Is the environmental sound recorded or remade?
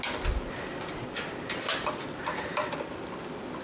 recorded